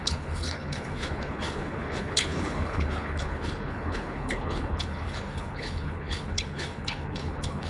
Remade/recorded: remade